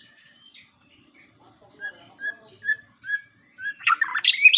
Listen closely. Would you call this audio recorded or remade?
remade